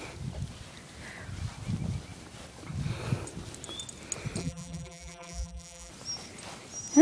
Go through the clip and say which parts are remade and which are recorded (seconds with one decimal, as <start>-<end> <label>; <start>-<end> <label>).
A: 0.0-4.4 recorded; 4.4-5.9 remade; 5.9-7.0 recorded